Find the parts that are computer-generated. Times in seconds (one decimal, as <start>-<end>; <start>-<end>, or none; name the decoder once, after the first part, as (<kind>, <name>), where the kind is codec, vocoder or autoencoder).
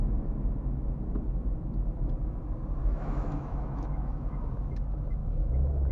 2.8-4.5 (autoencoder, DAC-VAE); 5.2-5.9